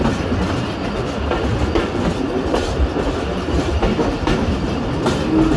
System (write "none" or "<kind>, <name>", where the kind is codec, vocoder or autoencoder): none